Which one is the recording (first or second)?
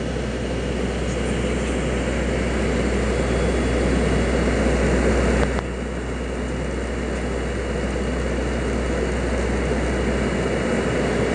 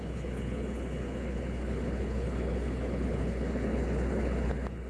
first